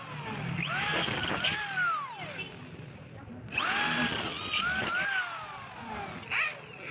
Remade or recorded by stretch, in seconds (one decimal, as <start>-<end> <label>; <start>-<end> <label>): 0.0-6.9 recorded